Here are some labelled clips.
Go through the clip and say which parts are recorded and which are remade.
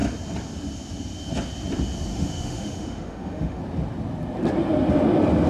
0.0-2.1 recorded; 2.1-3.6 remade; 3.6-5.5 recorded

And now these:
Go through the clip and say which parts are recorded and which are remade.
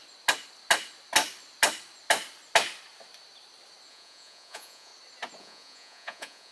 0.0-3.9 recorded; 3.9-4.9 remade; 4.9-5.4 recorded; 5.4-6.5 remade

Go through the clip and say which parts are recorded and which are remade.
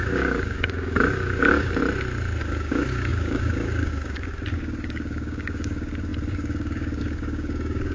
0.0-1.8 remade; 1.8-2.4 recorded; 2.4-7.9 remade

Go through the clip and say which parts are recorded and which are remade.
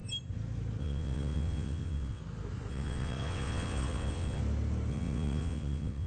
0.0-0.8 recorded; 0.8-2.2 remade; 2.2-2.7 recorded; 2.7-4.4 remade; 4.4-4.9 recorded; 4.9-6.1 remade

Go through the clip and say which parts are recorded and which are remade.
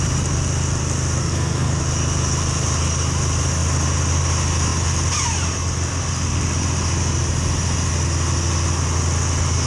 0.0-1.2 recorded; 1.2-1.8 remade; 1.8-9.7 recorded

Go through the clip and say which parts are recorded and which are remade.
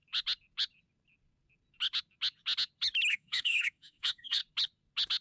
0.0-3.1 recorded; 3.1-4.4 remade; 4.4-5.2 recorded